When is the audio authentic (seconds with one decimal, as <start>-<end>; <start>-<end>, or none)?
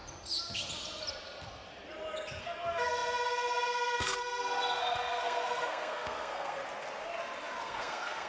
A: 0.0-2.4; 6.6-7.6